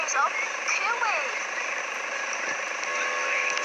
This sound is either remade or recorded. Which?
remade